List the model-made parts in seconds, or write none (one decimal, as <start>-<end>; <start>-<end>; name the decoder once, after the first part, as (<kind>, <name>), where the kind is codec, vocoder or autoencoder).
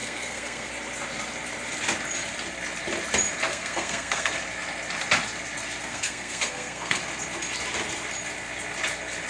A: 0.0-0.7 (codec, SNAC); 3.5-4.3; 5.8-7.0